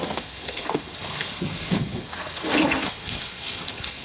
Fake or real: fake